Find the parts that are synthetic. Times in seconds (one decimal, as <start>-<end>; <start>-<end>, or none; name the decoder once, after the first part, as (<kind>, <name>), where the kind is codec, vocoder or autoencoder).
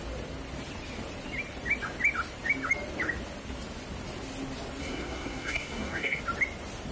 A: 4.8-6.2 (codec, SNAC)